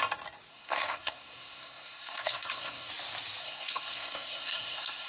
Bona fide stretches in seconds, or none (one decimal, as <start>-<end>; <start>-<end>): 0.0-0.5; 2.9-3.4